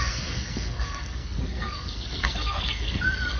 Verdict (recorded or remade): remade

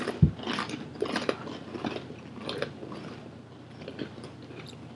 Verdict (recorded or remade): recorded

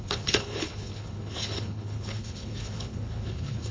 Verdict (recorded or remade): remade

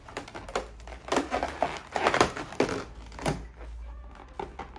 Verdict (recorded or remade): recorded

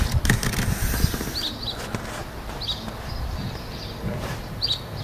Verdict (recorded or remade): recorded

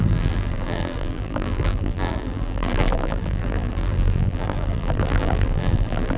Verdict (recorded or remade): remade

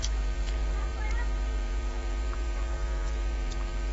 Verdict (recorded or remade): remade